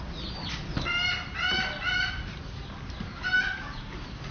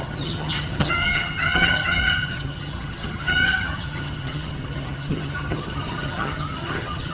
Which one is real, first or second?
first